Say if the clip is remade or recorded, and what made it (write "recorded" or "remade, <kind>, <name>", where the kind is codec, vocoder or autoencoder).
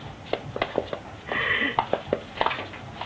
recorded